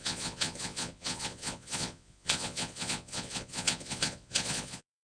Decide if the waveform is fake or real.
fake